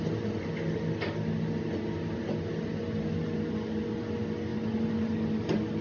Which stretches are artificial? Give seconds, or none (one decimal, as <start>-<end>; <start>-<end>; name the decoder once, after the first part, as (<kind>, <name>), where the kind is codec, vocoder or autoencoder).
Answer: none